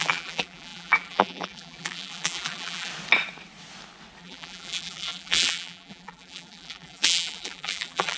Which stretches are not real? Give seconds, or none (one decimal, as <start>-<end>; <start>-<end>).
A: 0.0-2.9; 4.2-8.2